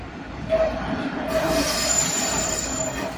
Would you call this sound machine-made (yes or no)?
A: yes